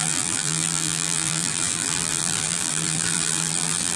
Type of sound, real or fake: fake